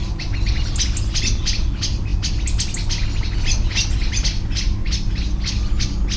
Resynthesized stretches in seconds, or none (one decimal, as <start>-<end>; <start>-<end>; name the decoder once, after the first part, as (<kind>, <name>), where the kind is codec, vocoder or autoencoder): none